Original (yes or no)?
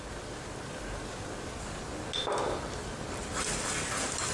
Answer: yes